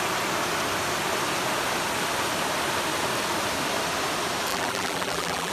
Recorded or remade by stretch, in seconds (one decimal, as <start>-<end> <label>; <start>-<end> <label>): 0.0-4.5 recorded; 4.5-5.5 remade